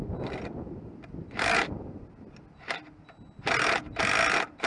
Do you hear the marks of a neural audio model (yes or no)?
no